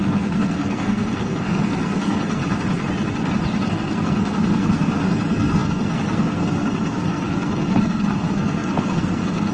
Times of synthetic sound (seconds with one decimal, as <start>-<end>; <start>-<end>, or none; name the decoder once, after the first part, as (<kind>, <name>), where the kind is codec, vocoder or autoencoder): 0.0-2.4 (codec, SNAC); 3.7-9.5